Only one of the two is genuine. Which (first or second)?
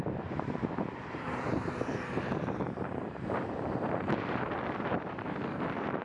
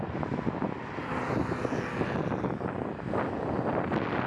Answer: second